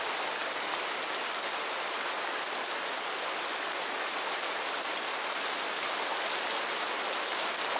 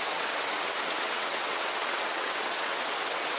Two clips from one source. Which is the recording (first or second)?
first